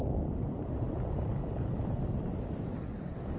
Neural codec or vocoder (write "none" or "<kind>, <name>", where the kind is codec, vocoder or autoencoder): none